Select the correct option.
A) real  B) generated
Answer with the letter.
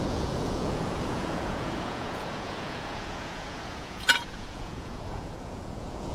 B